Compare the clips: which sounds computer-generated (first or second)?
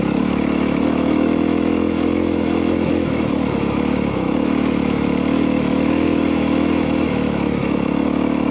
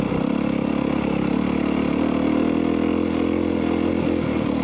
first